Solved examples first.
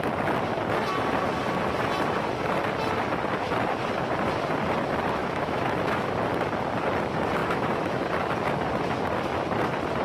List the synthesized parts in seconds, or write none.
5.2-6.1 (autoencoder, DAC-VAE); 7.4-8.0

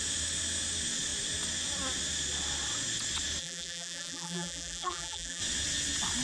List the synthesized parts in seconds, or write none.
3.4-5.4 (vocoder, BigVGAN v2)

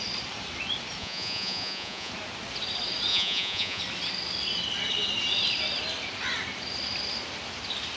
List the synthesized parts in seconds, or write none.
1.0-2.1 (vocoder, Vocos); 3.1-3.8

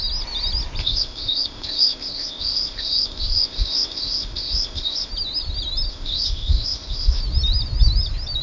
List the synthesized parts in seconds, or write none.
0.8-5.1 (codec, ZipCodec); 5.9-7.2